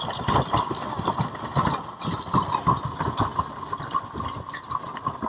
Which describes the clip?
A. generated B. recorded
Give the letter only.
B